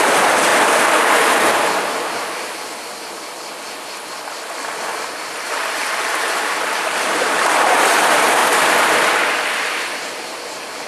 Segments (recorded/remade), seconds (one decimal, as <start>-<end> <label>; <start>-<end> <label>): 0.0-0.5 remade; 0.5-4.8 recorded; 4.8-8.4 remade; 8.4-9.7 recorded; 9.7-10.9 remade